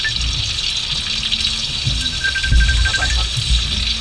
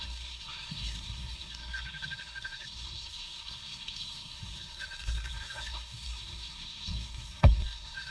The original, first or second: first